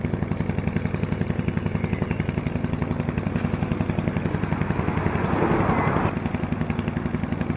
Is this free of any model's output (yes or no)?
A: yes